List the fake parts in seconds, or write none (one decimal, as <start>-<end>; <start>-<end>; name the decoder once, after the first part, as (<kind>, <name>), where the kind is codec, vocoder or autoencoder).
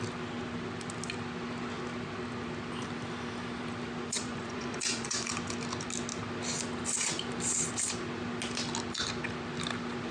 4.1-5.3 (vocoder, Vocos)